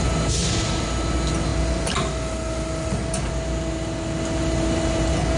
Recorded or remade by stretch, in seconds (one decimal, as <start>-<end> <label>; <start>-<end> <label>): 0.0-5.4 recorded